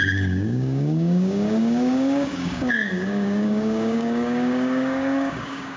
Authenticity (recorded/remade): remade